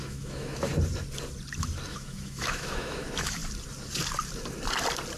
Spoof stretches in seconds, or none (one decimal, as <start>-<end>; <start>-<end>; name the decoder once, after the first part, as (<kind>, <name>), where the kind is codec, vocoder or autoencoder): 0.0-0.7 (autoencoder, DAC-VAE); 1.9-3.4